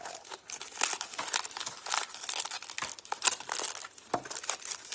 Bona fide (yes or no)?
yes